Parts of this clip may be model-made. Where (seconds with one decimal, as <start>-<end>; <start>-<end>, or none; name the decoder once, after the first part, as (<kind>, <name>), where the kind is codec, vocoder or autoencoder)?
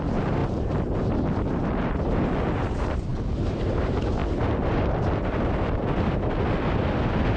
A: 3.1-3.6 (vocoder, BigVGAN v2); 4.2-6.3